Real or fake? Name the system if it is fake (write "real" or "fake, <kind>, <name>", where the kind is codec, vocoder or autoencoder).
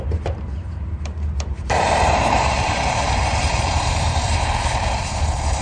fake, vocoder, BigVGAN v2